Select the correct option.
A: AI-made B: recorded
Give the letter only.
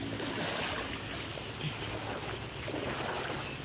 B